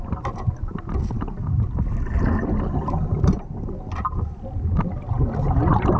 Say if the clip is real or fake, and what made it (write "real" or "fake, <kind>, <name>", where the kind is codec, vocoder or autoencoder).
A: real